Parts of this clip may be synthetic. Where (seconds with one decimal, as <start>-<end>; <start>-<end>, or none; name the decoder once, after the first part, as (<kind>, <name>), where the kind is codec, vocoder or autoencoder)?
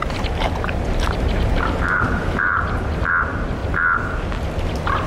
0.0-3.1 (vocoder, BigVGAN v2)